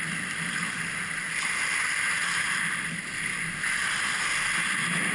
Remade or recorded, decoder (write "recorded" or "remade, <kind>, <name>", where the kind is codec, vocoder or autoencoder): recorded